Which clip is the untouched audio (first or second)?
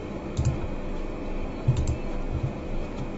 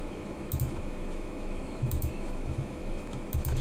first